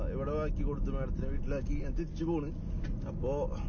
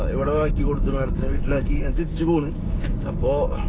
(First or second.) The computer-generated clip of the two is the second